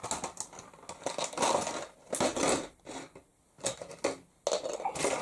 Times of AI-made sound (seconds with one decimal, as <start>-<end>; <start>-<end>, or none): none